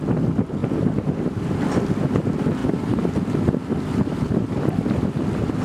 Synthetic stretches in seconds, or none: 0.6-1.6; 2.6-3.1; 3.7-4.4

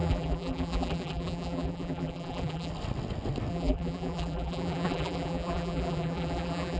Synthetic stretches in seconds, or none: 0.0-2.7; 3.5-6.8

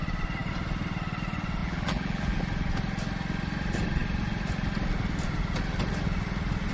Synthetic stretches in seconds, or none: 1.6-2.4